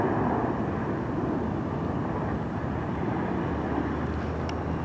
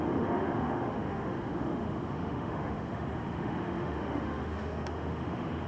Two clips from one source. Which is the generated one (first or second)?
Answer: second